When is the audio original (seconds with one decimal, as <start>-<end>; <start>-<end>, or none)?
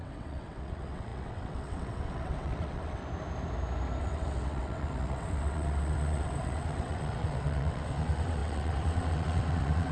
3.0-4.0